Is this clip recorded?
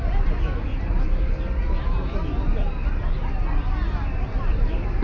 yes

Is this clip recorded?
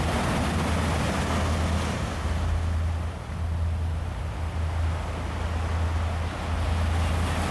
yes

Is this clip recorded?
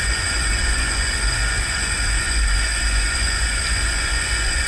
no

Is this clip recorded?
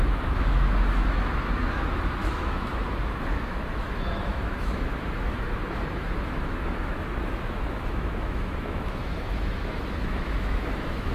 no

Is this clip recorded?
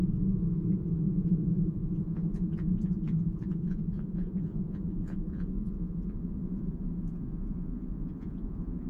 no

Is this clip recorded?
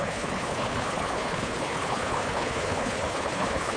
no